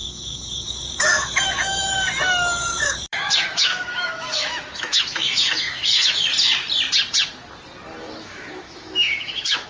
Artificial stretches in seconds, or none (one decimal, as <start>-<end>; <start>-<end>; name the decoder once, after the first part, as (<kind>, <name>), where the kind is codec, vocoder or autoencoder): 0.0-6.3 (autoencoder, DAC-VAE); 8.2-9.7